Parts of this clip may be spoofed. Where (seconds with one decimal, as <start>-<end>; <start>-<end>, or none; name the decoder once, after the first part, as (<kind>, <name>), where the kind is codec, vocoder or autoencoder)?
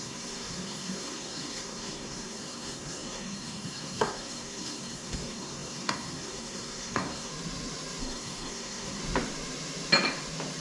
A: 0.0-7.3 (codec, SNAC); 8.0-9.0